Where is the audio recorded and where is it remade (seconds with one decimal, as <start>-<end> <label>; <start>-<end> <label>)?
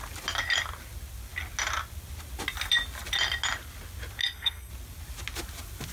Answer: 0.0-4.2 recorded; 4.2-4.7 remade; 4.7-5.9 recorded